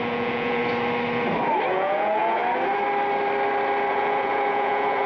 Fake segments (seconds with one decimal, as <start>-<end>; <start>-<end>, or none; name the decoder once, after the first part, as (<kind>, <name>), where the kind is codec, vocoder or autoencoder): 0.0-0.6 (vocoder, Vocos); 1.7-2.4; 3.9-5.1